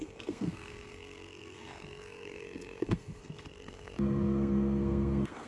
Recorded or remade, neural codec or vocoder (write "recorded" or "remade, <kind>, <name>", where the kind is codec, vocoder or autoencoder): remade, codec, SNAC